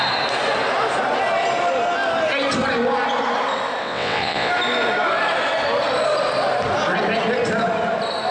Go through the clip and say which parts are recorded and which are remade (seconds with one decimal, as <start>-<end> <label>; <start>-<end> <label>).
0.0-3.8 recorded; 3.8-4.5 remade; 4.5-8.3 recorded